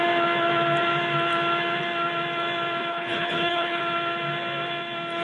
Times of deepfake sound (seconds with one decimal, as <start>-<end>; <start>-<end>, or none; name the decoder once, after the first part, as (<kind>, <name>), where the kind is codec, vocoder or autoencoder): 2.9-3.8 (codec, HILCodec)